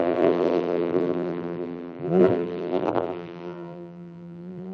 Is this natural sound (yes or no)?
no